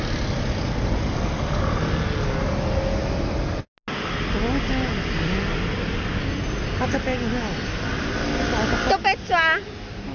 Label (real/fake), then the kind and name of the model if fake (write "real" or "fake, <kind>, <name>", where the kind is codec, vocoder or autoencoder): real